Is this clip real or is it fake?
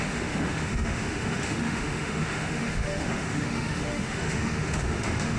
fake